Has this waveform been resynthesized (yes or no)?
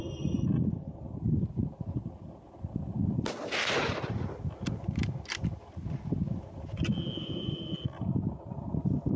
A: no